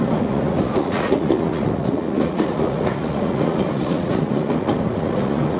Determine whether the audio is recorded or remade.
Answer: remade